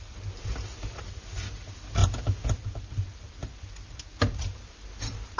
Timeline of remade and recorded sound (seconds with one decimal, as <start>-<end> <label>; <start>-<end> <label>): 0.0-5.4 recorded